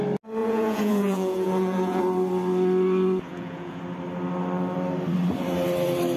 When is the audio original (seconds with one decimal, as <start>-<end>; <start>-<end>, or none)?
0.0-0.4; 2.0-3.3; 3.8-6.2